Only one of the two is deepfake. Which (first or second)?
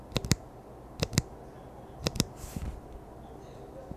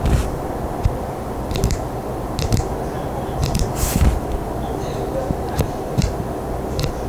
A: second